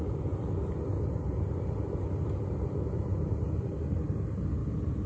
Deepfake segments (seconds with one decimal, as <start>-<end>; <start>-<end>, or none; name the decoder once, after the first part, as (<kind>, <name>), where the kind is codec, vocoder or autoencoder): none